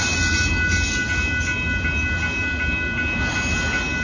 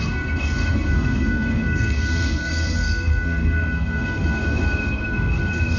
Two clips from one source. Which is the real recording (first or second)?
first